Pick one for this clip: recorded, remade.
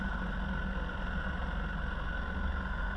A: recorded